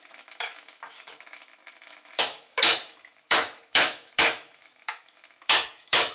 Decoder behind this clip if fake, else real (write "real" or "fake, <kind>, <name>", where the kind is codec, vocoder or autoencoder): fake, autoencoder, DAC-VAE